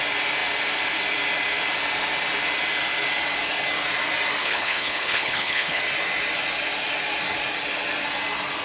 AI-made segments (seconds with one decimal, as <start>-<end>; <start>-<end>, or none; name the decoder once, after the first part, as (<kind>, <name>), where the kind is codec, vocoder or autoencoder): 4.4-5.8 (codec, HILCodec)